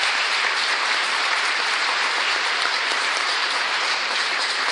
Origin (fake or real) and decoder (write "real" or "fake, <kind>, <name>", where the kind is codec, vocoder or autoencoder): fake, vocoder, BigVGAN v2